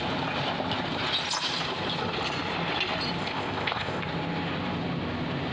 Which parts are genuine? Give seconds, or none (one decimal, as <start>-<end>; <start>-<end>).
0.0-3.2; 4.0-5.5